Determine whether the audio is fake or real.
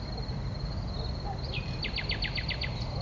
real